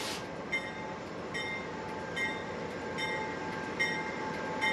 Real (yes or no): yes